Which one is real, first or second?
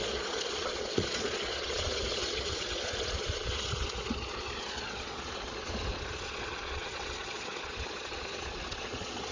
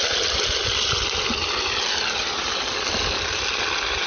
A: second